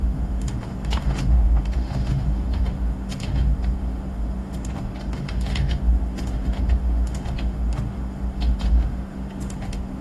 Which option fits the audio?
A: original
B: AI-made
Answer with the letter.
B